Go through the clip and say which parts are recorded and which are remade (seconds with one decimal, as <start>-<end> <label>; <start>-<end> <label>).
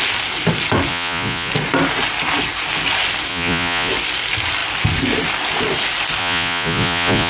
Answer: 0.0-0.9 recorded; 0.9-1.5 remade; 1.5-3.3 recorded; 3.3-3.9 remade; 3.9-6.2 recorded; 6.2-7.3 remade